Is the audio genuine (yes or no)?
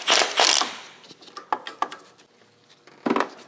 yes